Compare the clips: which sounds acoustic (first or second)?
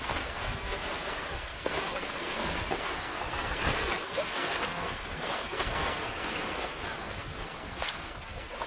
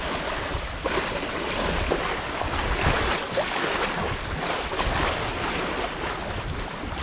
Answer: second